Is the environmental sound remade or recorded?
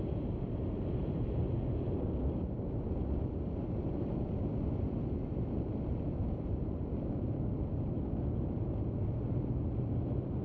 recorded